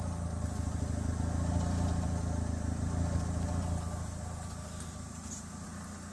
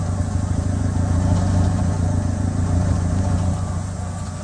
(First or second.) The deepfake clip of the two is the second